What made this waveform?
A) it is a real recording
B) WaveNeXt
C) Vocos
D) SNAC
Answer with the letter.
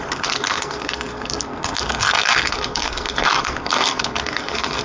D